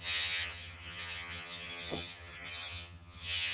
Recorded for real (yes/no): no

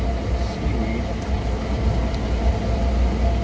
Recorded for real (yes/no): yes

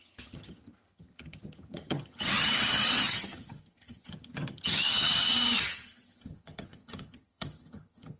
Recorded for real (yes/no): no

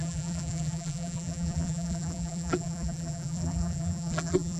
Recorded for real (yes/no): no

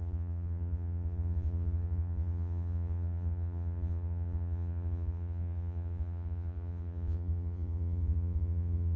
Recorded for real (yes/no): no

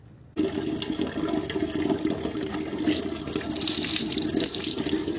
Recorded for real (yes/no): yes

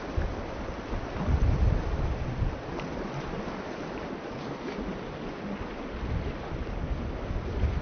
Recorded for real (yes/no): yes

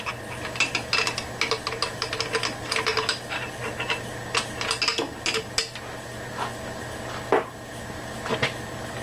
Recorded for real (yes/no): yes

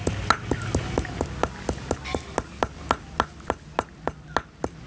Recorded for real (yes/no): yes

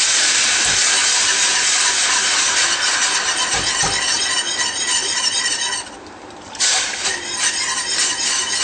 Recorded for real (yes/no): yes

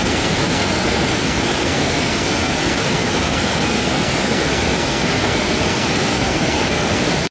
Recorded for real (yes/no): no